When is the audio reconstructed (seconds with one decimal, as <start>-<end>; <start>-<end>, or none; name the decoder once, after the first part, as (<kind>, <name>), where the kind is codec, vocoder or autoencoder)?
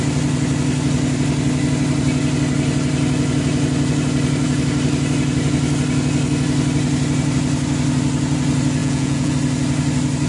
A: 8.8-9.3 (vocoder, Vocos)